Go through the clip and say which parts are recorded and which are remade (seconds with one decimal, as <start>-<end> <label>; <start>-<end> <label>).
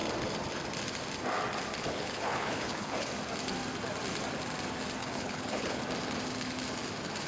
0.0-1.8 recorded; 1.8-3.1 remade; 3.1-5.0 recorded; 5.0-5.8 remade; 5.8-7.3 recorded